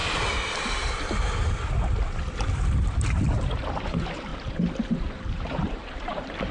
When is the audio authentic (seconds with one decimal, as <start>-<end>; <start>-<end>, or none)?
0.0-3.9; 4.3-4.9